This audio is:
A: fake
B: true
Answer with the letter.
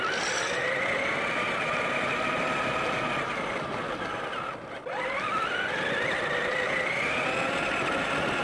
B